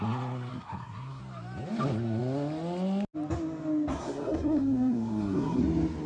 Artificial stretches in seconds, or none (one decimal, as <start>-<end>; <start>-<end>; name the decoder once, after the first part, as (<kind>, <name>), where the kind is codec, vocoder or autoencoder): 0.5-1.2 (codec, SNAC); 3.9-5.6